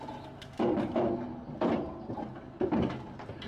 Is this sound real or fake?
real